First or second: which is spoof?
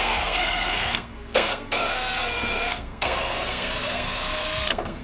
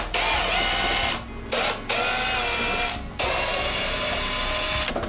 first